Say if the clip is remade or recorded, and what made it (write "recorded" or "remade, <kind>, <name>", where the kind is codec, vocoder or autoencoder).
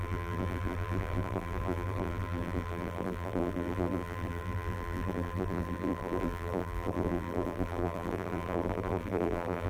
remade, vocoder, BigVGAN v2